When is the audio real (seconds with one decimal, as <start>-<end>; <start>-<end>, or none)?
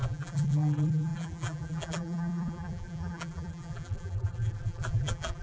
none